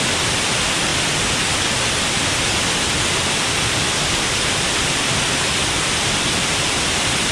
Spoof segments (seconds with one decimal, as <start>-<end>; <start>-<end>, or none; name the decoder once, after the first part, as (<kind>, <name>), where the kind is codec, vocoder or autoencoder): none